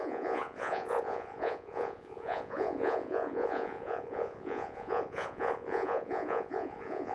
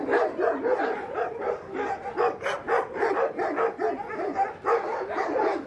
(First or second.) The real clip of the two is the second